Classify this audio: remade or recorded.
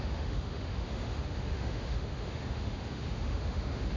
remade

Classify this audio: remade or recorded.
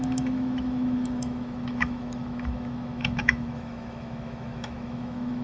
remade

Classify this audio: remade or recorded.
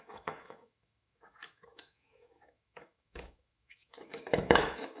remade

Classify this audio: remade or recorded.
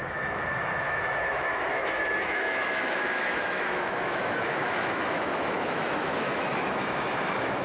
remade